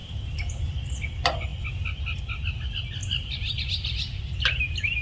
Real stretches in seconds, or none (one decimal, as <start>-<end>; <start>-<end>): 0.7-3.0; 4.2-5.0